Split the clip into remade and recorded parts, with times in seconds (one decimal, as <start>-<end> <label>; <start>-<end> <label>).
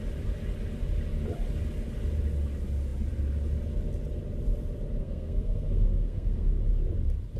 0.0-5.0 recorded; 5.0-6.6 remade; 6.6-7.4 recorded